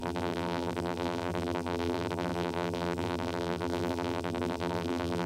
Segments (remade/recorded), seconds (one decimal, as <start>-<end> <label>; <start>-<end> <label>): 0.0-5.3 remade

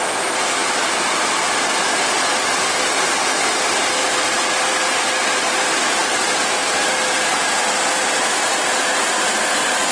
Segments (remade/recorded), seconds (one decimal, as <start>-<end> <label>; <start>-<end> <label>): 0.0-4.0 recorded; 4.0-5.5 remade; 5.5-6.0 recorded; 6.0-8.6 remade; 8.6-9.9 recorded

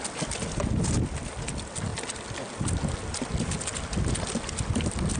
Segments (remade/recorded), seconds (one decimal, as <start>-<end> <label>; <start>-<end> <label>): 0.0-0.4 remade; 0.4-1.5 recorded; 1.5-1.9 remade; 1.9-5.2 recorded

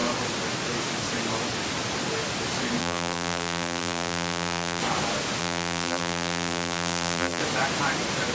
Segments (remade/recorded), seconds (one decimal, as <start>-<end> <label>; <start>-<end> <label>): 0.0-2.8 recorded; 2.8-4.8 remade; 4.8-5.4 recorded; 5.4-7.4 remade; 7.4-8.3 recorded

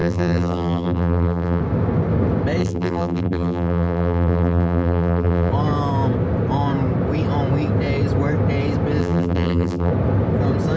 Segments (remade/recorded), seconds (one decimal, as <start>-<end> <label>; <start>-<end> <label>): 0.0-1.6 remade; 1.6-2.6 recorded; 2.6-5.5 remade; 5.5-9.0 recorded; 9.0-9.9 remade; 9.9-10.8 recorded

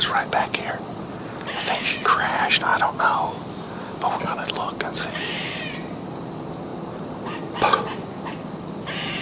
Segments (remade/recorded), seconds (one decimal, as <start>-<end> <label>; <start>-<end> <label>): 0.0-2.7 remade; 2.7-3.4 recorded; 3.4-9.2 remade